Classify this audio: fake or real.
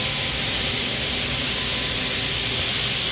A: real